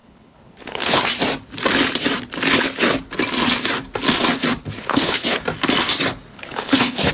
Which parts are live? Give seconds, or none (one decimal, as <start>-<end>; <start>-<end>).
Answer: 1.0-4.8; 5.4-6.3